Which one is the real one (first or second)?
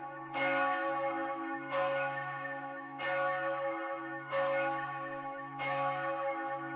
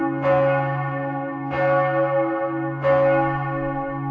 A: second